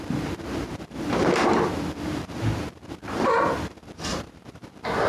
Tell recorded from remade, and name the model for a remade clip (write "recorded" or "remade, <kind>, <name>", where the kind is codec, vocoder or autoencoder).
remade, vocoder, BigVGAN v2